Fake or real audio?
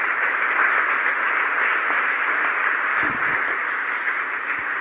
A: real